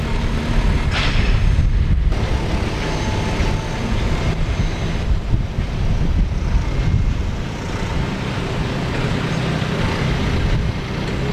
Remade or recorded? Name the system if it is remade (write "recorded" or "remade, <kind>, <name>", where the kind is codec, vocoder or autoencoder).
recorded